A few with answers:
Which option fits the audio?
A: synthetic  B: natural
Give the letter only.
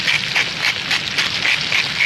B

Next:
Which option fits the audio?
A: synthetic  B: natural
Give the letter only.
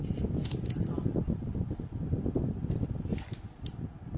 B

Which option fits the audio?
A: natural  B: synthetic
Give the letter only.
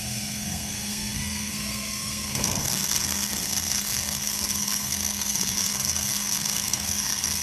B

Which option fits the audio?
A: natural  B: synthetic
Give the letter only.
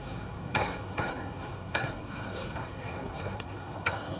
B